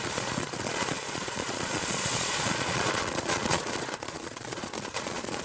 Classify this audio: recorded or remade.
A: remade